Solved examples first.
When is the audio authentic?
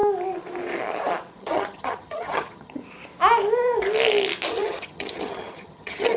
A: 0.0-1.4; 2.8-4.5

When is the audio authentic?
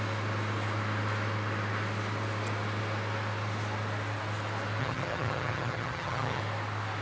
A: 0.0-4.8; 6.4-7.0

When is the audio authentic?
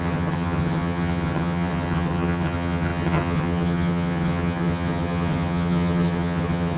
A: none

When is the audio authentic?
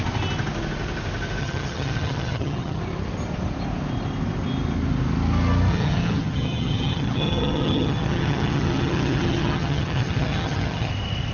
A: 0.0-1.4; 2.8-5.7; 10.9-11.3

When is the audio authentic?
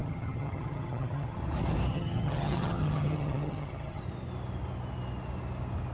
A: 1.4-1.9; 4.0-5.9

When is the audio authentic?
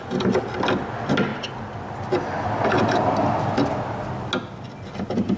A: 0.0-5.4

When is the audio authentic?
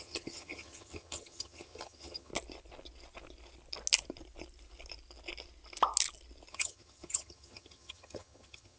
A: 2.3-6.5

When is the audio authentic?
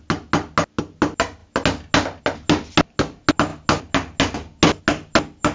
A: 0.0-5.5